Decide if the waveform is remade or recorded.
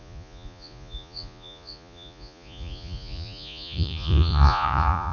remade